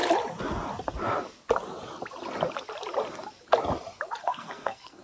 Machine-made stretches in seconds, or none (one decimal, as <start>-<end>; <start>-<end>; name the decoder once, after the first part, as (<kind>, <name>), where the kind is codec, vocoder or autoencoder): 4.2-5.0 (codec, SNAC)